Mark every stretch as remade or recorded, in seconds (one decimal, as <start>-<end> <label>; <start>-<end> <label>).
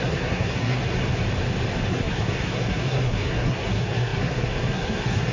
0.0-0.8 remade; 0.8-1.9 recorded; 1.9-5.3 remade